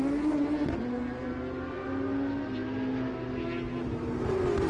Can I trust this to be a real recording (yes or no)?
yes